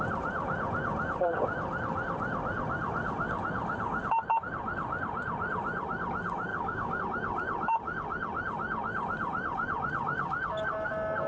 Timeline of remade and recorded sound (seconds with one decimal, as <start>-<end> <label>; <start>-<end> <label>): 0.0-6.5 recorded; 6.5-7.0 remade; 7.0-11.3 recorded

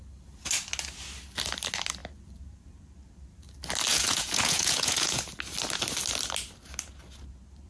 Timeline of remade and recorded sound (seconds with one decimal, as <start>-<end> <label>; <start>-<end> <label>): 0.0-3.9 recorded; 3.9-5.2 remade; 5.2-7.7 recorded